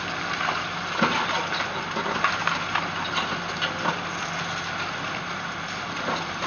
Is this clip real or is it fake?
real